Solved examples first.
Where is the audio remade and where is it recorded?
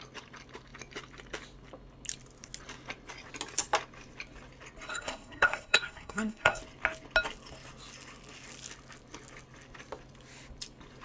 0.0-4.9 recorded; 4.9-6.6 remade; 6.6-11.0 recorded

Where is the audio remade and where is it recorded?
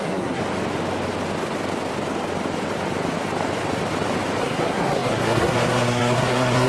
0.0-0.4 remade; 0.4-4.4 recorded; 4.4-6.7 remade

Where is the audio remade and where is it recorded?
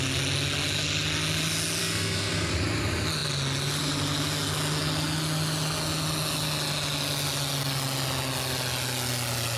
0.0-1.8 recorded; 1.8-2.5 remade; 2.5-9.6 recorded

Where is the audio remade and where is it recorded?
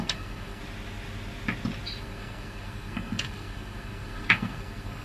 0.0-0.6 remade; 0.6-2.0 recorded; 2.0-5.0 remade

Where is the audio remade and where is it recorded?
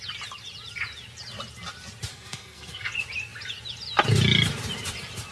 0.0-2.1 recorded; 2.1-2.9 remade; 2.9-5.3 recorded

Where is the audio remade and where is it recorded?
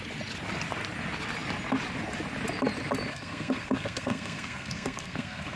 0.0-3.1 recorded; 3.1-5.6 remade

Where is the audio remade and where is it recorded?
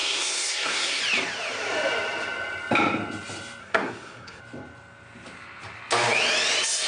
0.0-1.0 remade; 1.0-3.6 recorded; 3.6-4.4 remade; 4.4-6.9 recorded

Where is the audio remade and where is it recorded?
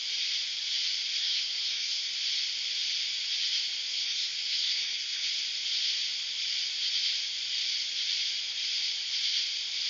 0.0-1.2 recorded; 1.2-2.1 remade; 2.1-3.9 recorded; 3.9-5.3 remade; 5.3-9.9 recorded